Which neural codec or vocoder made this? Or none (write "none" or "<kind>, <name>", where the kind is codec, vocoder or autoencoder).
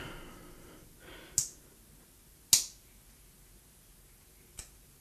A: none